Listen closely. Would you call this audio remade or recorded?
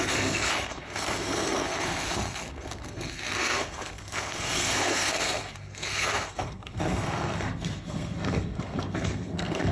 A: remade